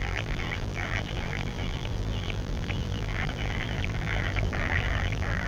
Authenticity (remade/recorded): remade